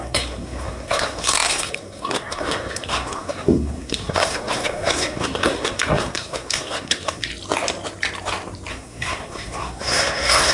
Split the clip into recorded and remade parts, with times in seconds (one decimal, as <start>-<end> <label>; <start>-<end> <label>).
0.0-7.3 remade; 7.3-8.7 recorded; 8.7-10.5 remade